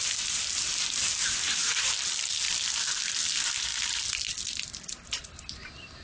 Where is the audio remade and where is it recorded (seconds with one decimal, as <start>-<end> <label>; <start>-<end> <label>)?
0.0-6.0 recorded

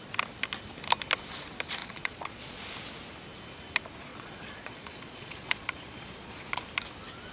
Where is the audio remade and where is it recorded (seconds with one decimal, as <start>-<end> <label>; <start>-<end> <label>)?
0.0-1.8 recorded; 1.8-2.6 remade; 2.6-4.1 recorded; 4.1-6.6 remade; 6.6-7.3 recorded